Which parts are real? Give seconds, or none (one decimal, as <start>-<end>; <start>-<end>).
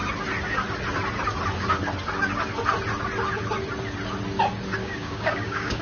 0.0-4.8